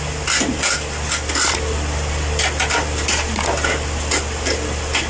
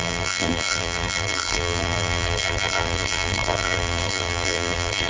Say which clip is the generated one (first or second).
second